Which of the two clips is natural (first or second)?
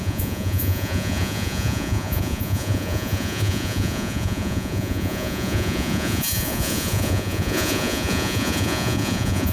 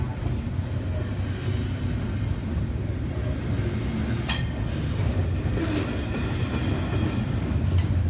second